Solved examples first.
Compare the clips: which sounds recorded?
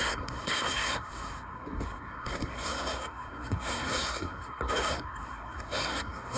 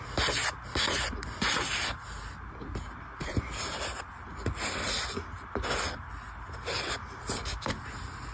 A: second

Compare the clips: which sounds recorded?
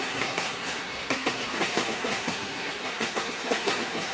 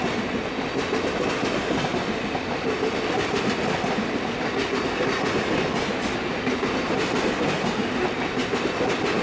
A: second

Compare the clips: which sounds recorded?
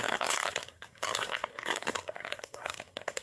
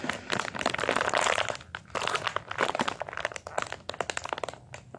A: second